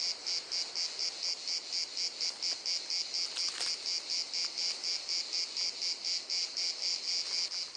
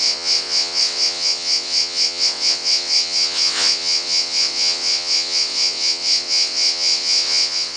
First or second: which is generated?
second